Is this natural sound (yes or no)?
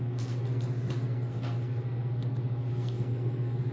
no